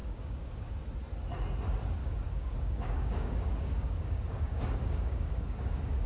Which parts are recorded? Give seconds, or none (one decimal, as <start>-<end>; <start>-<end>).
0.7-2.0